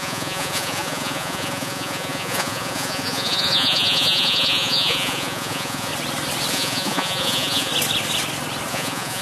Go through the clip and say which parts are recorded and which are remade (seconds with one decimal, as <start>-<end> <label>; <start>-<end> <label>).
0.0-5.9 remade; 5.9-6.5 recorded; 6.5-7.7 remade; 7.7-8.7 recorded; 8.7-9.2 remade